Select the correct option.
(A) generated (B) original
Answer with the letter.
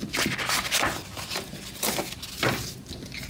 B